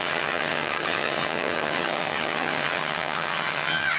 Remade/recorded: remade